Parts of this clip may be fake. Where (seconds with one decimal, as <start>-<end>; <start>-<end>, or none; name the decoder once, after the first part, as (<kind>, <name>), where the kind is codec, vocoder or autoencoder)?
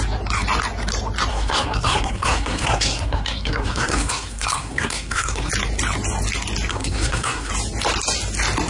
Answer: 1.3-5.5 (codec, SNAC); 6.7-7.5